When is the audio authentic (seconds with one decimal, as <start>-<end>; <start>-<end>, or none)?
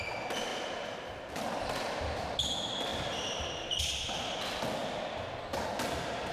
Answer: 0.0-0.5; 1.1-2.9; 3.8-4.8; 5.3-6.3